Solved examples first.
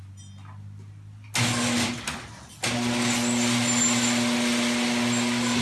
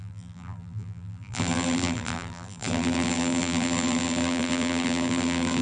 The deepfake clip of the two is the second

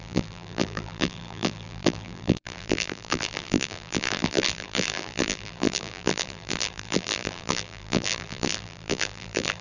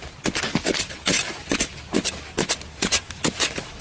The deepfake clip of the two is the first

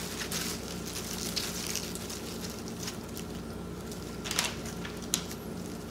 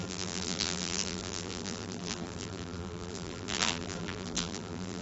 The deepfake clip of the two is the second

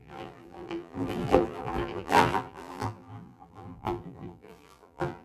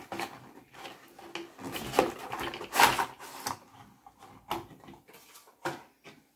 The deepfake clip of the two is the first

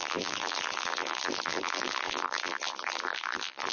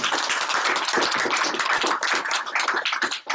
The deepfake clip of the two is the first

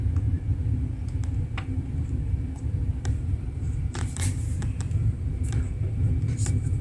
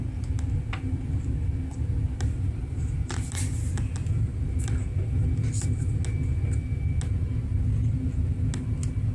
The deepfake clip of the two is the first